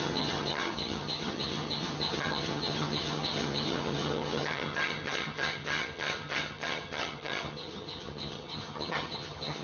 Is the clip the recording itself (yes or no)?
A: no